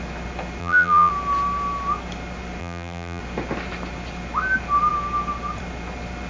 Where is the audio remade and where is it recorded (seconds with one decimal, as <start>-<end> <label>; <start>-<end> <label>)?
0.0-0.6 recorded; 0.6-1.1 remade; 1.1-2.6 recorded; 2.6-3.2 remade; 3.2-6.3 recorded